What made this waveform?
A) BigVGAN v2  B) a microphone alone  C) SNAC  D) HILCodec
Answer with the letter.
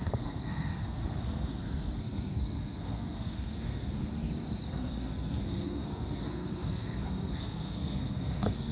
C